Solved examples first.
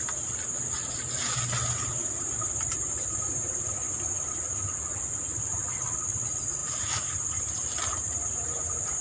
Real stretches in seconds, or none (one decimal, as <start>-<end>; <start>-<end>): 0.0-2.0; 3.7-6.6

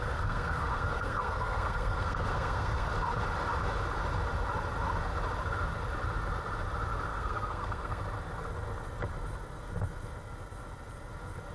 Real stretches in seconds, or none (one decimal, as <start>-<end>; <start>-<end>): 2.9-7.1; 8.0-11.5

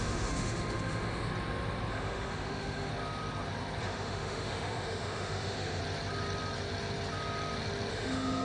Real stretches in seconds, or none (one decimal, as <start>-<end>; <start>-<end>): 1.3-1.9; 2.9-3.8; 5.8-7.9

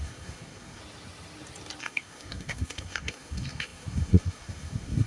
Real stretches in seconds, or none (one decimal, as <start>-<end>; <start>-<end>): 0.8-1.8

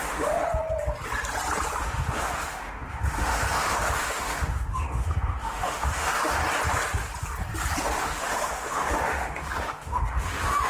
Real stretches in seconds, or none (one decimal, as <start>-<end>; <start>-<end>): 0.4-1.8; 6.4-7.8

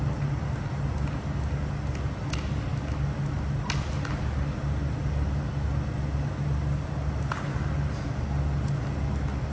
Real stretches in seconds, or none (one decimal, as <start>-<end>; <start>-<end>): 0.0-9.5